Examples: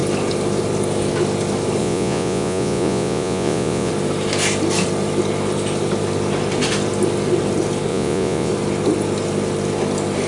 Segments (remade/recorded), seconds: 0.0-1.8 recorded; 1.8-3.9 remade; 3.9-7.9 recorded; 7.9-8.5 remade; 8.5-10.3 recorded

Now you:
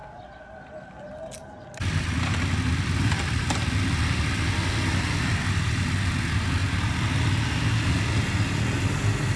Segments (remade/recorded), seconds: 0.0-9.4 recorded

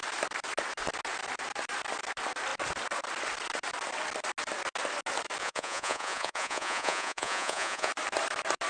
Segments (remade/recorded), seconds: 0.0-5.4 recorded; 5.4-7.9 remade; 7.9-8.7 recorded

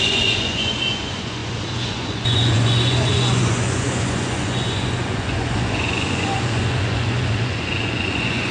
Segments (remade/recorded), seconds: 0.0-8.5 remade

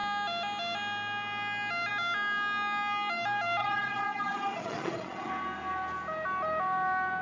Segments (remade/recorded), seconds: 0.0-3.6 recorded; 3.6-5.3 remade; 5.3-7.2 recorded

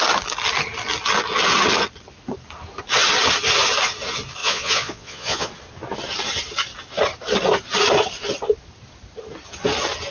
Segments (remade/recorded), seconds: 0.0-4.4 recorded; 4.4-5.5 remade; 5.5-10.1 recorded

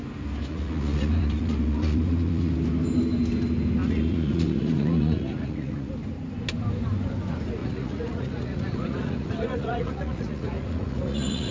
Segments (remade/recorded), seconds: 0.0-0.5 recorded; 0.5-2.5 remade; 2.5-3.8 recorded; 3.8-5.9 remade; 5.9-7.6 recorded; 7.6-11.5 remade

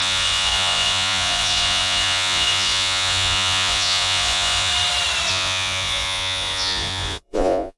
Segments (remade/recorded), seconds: 0.0-4.7 remade; 4.7-5.3 recorded; 5.3-7.8 remade